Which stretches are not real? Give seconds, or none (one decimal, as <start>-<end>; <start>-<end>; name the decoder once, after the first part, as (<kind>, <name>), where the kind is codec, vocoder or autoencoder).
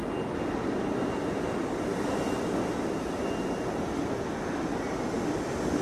1.9-5.8 (vocoder, BigVGAN v2)